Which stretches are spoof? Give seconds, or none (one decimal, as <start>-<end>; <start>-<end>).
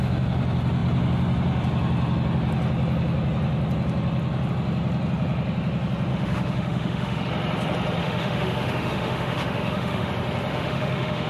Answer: 6.1-7.3; 8.0-10.1; 10.5-11.3